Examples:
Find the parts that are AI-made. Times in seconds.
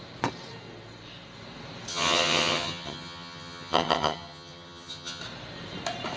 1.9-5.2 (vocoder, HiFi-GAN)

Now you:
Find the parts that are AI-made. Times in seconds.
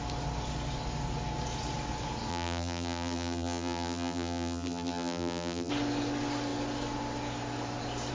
2.3-5.7 (vocoder, BigVGAN v2)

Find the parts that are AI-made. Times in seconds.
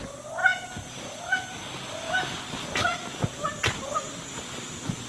none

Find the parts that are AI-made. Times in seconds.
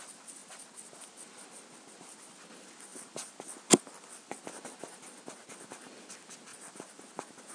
6.5-7.0 (vocoder, BigVGAN v2)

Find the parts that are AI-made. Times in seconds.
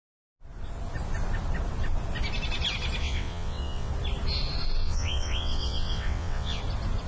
3.0-3.9 (vocoder, WaveNeXt); 4.8-6.6